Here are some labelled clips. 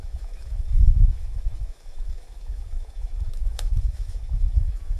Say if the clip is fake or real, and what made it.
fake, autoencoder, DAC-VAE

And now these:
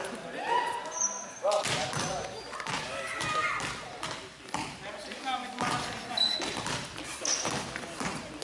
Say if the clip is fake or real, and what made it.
real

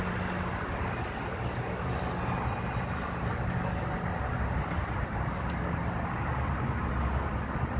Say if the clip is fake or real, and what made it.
real